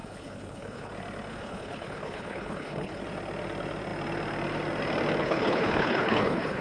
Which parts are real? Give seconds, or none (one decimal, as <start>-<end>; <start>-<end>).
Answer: 0.9-1.3; 3.0-5.2